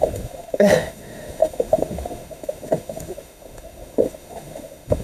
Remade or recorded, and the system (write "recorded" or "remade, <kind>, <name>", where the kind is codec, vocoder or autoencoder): remade, autoencoder, DAC-VAE